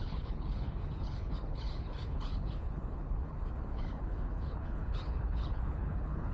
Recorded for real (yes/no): no